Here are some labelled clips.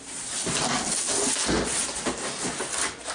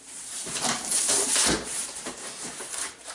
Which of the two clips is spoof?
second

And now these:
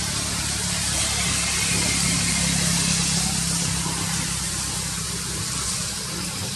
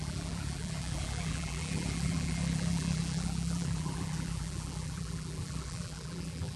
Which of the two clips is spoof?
second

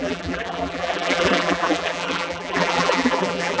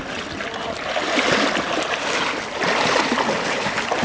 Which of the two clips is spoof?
first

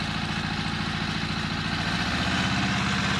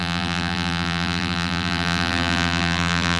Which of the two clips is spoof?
second